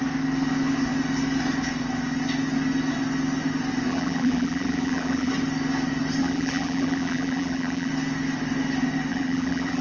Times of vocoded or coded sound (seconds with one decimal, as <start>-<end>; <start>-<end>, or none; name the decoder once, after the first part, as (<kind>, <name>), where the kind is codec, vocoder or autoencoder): 3.9-5.3 (vocoder, BigVGAN v2); 6.2-7.9; 9.1-9.8